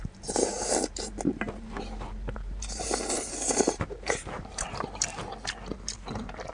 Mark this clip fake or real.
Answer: fake